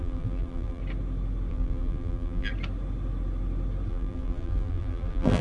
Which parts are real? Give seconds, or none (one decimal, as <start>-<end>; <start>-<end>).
0.8-1.5; 2.5-3.9